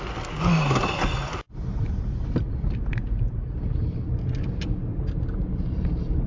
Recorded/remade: recorded